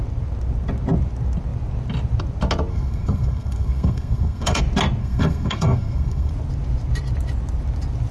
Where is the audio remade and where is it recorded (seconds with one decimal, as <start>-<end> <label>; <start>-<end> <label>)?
0.0-2.7 recorded; 2.7-4.6 remade; 4.6-5.0 recorded; 5.0-6.3 remade; 6.3-8.1 recorded